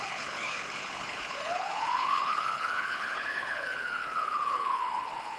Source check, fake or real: fake